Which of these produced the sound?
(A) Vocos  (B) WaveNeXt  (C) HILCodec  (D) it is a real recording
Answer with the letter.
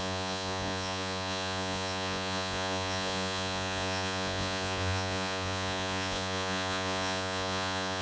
A